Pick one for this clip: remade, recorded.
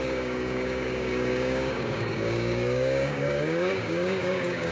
remade